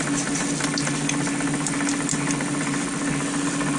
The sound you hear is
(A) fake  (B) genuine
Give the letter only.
B